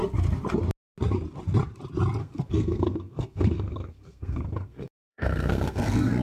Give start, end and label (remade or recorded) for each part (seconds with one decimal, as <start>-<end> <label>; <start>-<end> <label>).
0.0-2.2 recorded; 2.2-6.2 remade

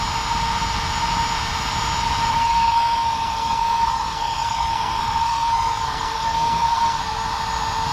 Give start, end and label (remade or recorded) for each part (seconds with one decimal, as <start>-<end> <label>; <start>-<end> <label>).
0.0-2.3 recorded; 2.3-7.0 remade; 7.0-7.9 recorded